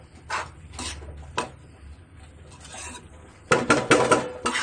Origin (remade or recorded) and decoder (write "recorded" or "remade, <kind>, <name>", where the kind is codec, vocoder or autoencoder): recorded